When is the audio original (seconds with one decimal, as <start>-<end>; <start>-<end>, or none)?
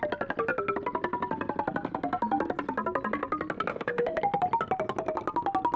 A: 0.0-3.7; 4.2-5.8